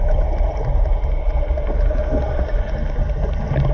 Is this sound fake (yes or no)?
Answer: no